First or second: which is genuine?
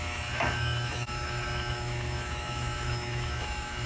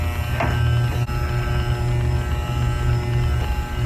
second